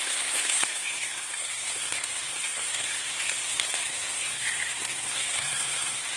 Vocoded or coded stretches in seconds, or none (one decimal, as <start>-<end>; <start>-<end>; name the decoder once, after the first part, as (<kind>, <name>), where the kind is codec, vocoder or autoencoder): 0.0-6.2 (codec, SNAC)